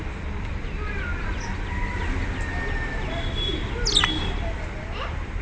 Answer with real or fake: real